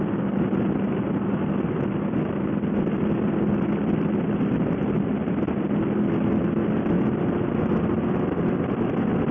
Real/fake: real